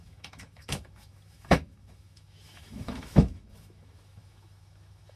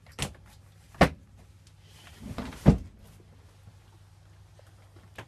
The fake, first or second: first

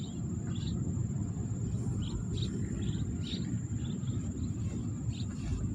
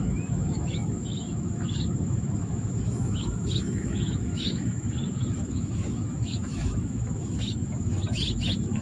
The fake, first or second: second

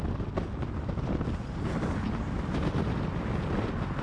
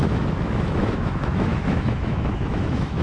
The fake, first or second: second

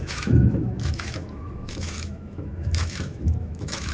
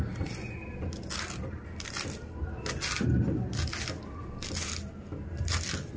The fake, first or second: first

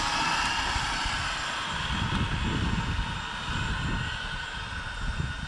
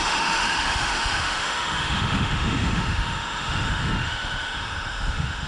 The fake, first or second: second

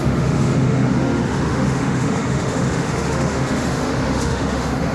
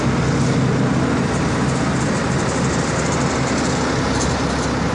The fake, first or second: first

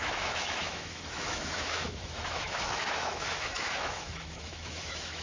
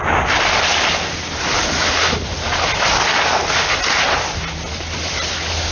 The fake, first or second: first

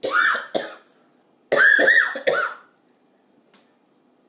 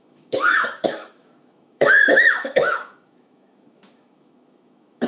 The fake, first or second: second